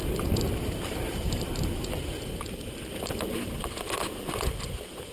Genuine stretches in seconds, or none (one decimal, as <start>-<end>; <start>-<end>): 3.1-5.1